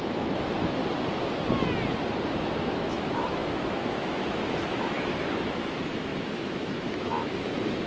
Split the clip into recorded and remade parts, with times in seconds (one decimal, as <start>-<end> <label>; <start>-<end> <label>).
0.0-0.8 remade; 0.8-2.4 recorded; 2.4-7.9 remade